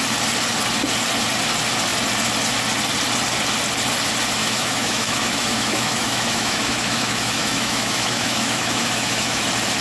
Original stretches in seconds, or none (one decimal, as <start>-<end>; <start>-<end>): 0.0-4.4; 9.4-9.8

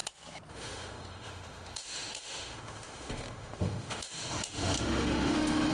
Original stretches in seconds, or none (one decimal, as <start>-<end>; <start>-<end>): 0.0-0.5

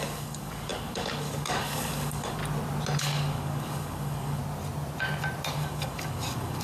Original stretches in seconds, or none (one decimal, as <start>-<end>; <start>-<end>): 2.4-3.0; 4.4-5.5

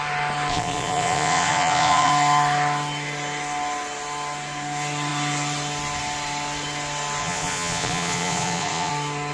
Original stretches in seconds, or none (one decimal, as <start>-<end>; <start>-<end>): 0.0-0.5; 2.1-7.2; 8.9-9.3

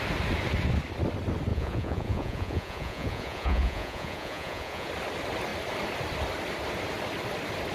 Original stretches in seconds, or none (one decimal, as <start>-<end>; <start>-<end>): 0.0-1.5; 4.9-7.7